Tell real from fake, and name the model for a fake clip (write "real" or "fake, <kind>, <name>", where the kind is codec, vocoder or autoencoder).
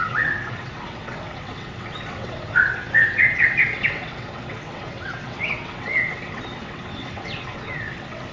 fake, vocoder, WaveNeXt